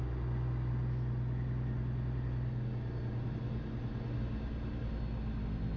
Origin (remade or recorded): recorded